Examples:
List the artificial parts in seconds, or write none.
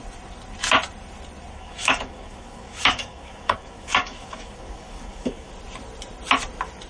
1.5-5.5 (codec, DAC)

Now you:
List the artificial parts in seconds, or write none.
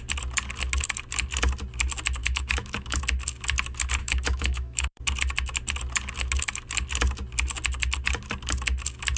2.2-3.0 (autoencoder, DAC-VAE); 4.0-5.0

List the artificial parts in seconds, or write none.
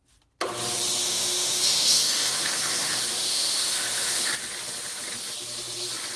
1.0-4.3 (autoencoder, DAC-VAE)